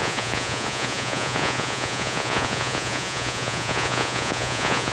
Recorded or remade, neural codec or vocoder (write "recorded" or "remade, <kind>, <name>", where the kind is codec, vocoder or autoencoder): remade, vocoder, Vocos